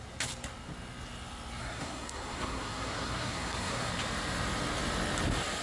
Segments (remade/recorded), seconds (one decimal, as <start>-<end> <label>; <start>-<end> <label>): 0.0-1.6 recorded; 1.6-3.9 remade; 3.9-5.6 recorded